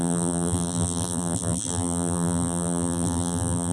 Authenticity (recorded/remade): remade